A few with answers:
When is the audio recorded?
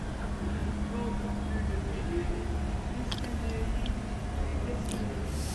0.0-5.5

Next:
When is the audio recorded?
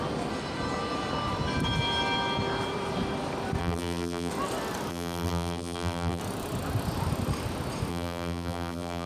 0.0-3.6; 4.3-4.9; 6.2-7.9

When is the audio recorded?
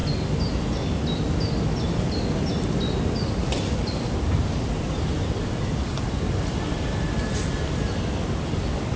0.0-9.0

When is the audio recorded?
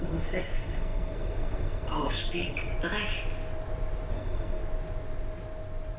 2.7-4.1; 4.6-6.0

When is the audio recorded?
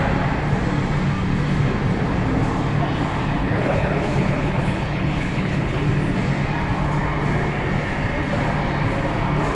0.0-3.4; 5.8-9.5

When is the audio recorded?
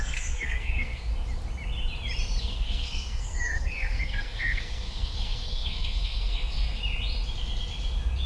1.1-2.4; 6.8-8.3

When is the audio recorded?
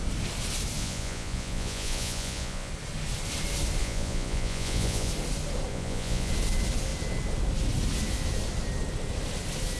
0.0-0.8; 2.7-3.8; 5.1-5.7; 6.3-9.8